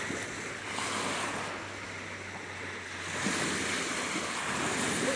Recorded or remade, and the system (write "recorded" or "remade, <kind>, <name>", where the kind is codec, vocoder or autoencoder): recorded